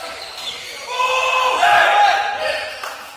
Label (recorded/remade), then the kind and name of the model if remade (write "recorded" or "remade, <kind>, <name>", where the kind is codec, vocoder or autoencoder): recorded